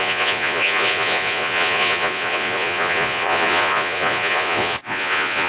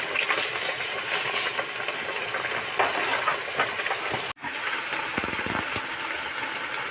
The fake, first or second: first